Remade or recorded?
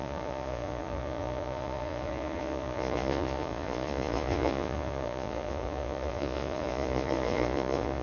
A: remade